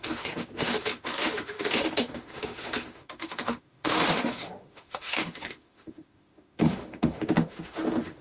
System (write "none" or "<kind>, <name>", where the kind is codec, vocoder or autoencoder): autoencoder, DAC-VAE